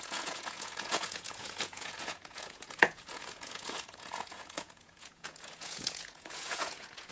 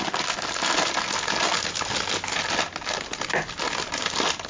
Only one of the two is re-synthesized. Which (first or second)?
first